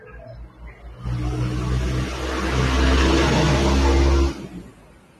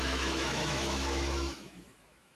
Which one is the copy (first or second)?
second